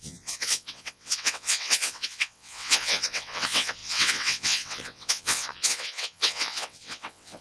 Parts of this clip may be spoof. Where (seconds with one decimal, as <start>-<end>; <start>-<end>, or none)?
0.0-7.4